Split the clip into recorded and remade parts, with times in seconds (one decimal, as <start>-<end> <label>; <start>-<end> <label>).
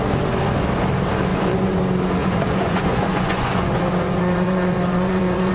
0.0-1.3 recorded; 1.3-1.8 remade; 1.8-2.2 recorded; 2.2-5.5 remade